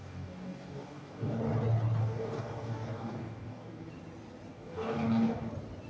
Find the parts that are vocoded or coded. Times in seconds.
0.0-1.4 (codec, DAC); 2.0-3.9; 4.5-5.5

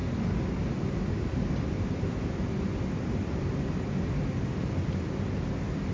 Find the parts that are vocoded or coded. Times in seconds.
none

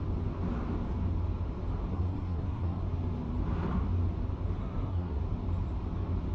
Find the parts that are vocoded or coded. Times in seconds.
1.9-2.8 (codec, SNAC); 4.6-5.2